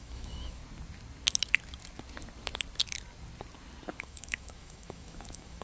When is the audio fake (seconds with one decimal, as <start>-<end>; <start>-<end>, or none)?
0.0-0.6; 4.0-5.6